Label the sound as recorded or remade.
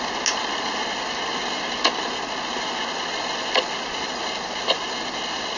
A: recorded